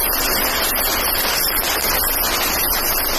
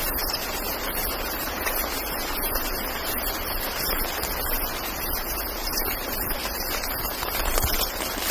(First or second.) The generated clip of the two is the second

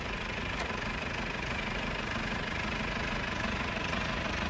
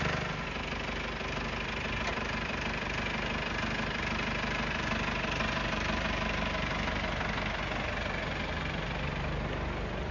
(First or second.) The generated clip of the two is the first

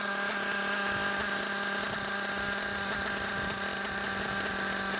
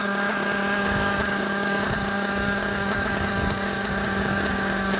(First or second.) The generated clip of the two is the second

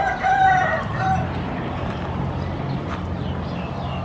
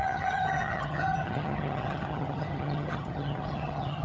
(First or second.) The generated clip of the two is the second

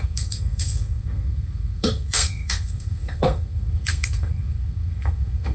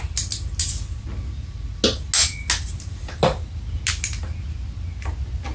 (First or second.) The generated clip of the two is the first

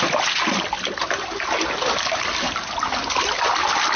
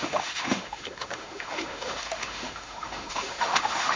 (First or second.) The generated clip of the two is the second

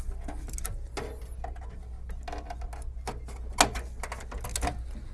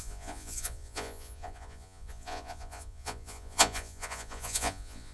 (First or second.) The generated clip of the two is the second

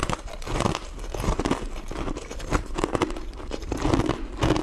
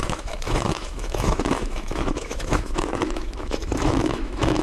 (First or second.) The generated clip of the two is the second